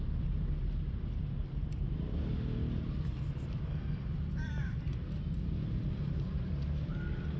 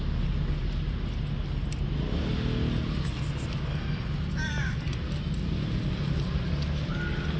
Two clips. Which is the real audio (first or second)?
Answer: second